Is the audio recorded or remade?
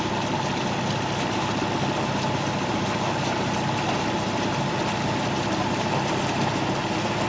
recorded